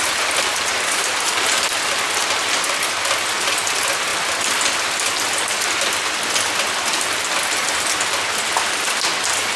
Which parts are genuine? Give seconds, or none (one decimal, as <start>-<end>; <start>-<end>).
0.0-9.6